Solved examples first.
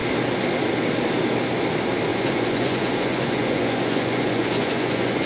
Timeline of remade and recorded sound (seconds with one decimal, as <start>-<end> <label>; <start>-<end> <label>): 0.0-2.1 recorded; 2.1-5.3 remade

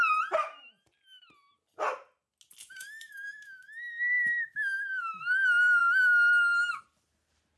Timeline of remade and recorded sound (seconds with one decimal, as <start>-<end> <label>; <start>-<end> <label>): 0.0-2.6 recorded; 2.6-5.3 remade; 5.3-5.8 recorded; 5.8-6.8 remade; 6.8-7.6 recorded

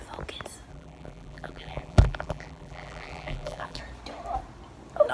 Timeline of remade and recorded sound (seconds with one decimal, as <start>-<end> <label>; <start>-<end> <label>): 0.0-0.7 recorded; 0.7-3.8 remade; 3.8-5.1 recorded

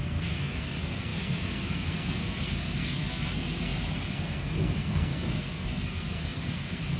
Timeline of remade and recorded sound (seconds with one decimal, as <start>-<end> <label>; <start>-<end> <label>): 0.0-7.0 remade

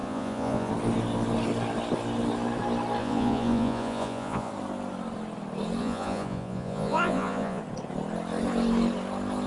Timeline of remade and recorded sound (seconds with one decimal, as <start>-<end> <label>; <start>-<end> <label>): 0.0-0.7 remade; 0.7-3.0 recorded; 3.0-4.5 remade; 4.5-5.8 recorded; 5.8-7.6 remade; 7.6-9.5 recorded

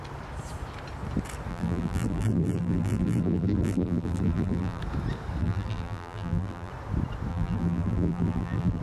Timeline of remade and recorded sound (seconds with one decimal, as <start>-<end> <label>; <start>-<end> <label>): 0.0-1.5 recorded; 1.5-4.8 remade; 4.8-5.4 recorded; 5.4-6.7 remade; 6.7-7.3 recorded; 7.3-8.8 remade